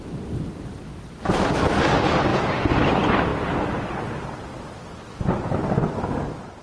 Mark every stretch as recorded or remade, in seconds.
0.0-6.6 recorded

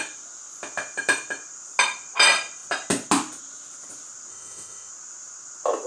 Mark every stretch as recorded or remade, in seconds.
0.0-4.3 recorded; 4.3-4.9 remade; 4.9-5.9 recorded

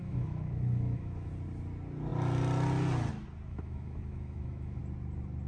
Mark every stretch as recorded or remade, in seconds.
0.0-1.3 remade; 1.3-3.5 recorded; 3.5-4.8 remade; 4.8-5.5 recorded

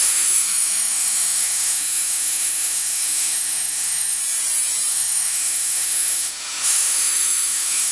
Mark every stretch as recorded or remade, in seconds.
0.0-4.2 remade; 4.2-4.9 recorded; 4.9-7.9 remade

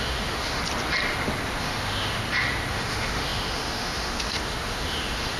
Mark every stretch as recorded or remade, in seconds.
0.0-0.6 remade; 0.6-1.6 recorded; 1.6-2.2 remade; 2.2-2.7 recorded; 2.7-5.4 remade

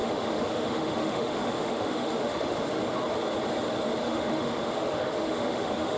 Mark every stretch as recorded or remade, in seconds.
0.0-2.8 remade; 2.8-4.0 recorded; 4.0-6.0 remade

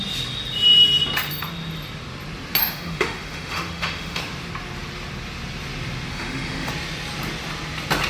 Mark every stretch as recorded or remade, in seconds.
0.0-2.6 recorded; 2.6-4.2 remade; 4.2-6.1 recorded; 6.1-6.7 remade; 6.7-8.1 recorded